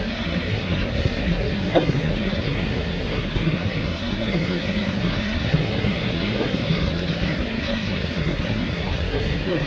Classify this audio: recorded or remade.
remade